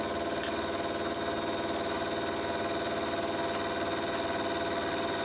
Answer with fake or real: real